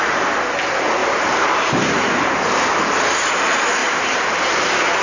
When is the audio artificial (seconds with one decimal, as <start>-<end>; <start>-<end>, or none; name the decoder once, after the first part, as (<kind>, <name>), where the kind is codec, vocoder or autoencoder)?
1.0-3.1 (vocoder, BigVGAN v2); 3.8-4.6

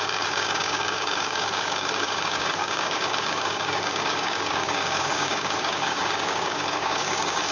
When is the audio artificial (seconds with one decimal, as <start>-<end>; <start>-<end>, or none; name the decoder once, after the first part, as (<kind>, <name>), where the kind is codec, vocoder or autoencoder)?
0.0-7.5 (codec, DAC)